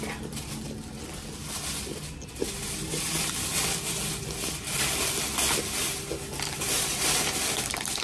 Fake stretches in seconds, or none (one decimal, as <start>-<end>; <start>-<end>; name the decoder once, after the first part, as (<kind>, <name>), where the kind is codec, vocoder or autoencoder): none